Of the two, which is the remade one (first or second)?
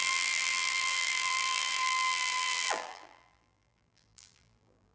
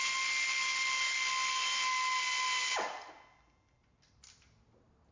first